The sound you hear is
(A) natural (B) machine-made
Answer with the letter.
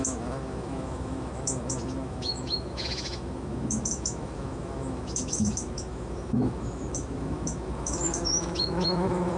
B